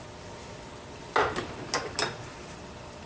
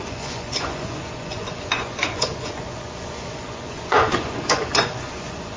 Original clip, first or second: first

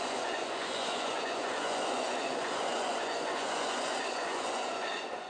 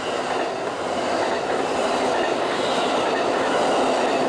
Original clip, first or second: second